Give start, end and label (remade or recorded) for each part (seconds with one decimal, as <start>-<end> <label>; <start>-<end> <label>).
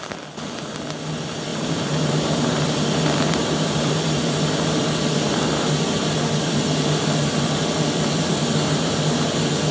0.0-1.5 recorded; 1.5-2.1 remade; 2.1-3.4 recorded; 3.4-4.2 remade; 4.2-9.7 recorded